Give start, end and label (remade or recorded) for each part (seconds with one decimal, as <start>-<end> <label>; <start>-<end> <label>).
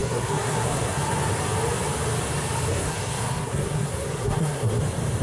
0.0-1.0 remade; 1.0-2.7 recorded; 2.7-4.8 remade; 4.8-5.2 recorded